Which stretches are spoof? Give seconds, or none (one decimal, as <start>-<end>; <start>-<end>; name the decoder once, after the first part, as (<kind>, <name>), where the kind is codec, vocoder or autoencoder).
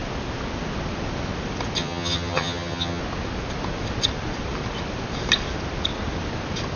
1.8-3.0 (vocoder, HiFi-GAN)